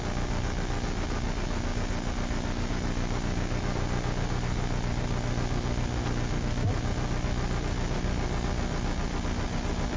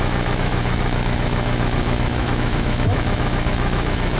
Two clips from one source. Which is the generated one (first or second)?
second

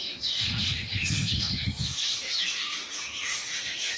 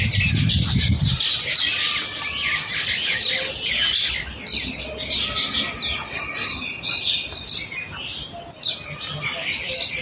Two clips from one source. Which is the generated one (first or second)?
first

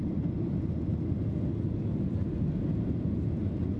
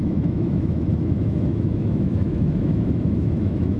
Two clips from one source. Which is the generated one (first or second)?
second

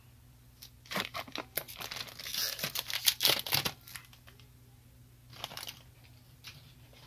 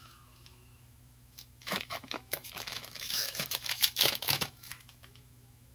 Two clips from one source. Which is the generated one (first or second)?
second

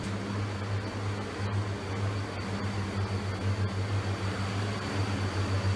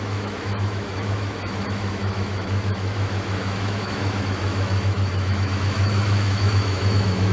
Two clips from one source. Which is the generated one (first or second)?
second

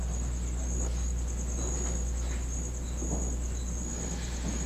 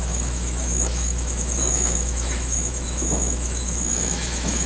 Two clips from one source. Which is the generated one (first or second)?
second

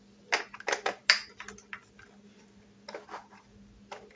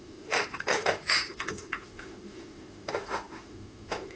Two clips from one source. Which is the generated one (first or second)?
second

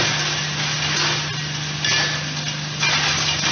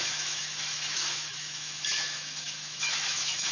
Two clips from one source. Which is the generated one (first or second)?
second